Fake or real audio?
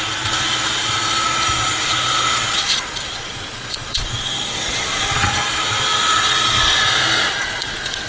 fake